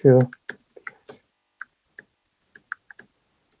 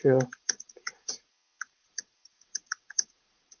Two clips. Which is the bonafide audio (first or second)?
first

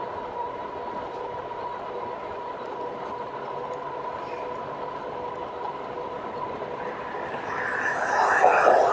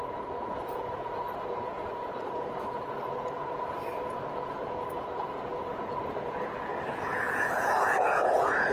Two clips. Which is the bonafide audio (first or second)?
first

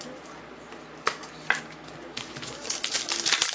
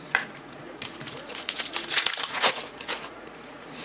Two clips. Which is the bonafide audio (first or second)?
first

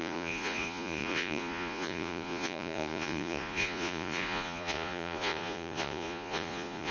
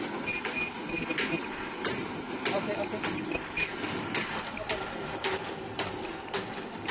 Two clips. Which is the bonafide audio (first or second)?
second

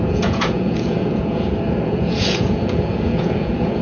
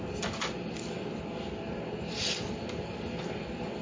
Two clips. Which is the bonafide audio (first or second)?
second